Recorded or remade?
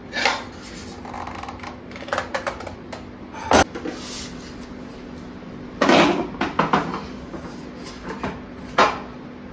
recorded